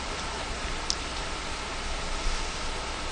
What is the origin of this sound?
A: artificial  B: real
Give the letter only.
B